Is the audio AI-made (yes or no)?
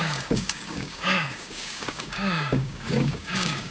yes